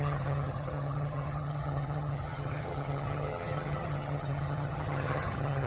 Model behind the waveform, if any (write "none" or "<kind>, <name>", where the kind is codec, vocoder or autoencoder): vocoder, HiFi-GAN